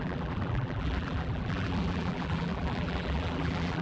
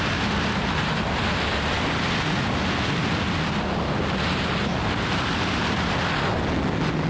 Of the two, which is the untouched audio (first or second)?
second